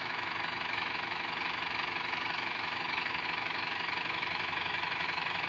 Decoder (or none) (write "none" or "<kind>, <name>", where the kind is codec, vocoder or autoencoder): autoencoder, DAC-VAE